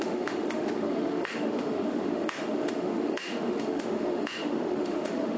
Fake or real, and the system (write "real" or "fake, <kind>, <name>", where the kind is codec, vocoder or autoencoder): fake, autoencoder, DAC-VAE